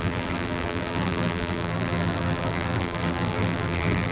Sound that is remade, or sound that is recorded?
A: remade